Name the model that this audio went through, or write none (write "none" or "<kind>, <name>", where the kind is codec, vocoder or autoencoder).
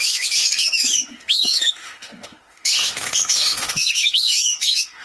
autoencoder, DAC-VAE